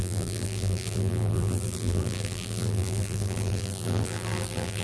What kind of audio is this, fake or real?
fake